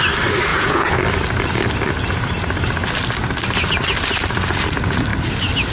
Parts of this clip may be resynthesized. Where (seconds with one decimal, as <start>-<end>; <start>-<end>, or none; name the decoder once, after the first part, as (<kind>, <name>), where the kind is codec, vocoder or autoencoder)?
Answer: 0.5-1.0 (vocoder, Vocos)